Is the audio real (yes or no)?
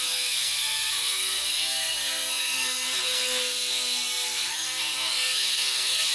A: no